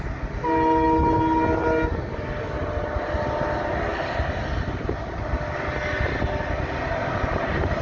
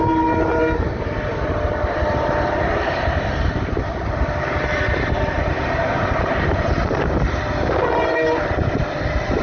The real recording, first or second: first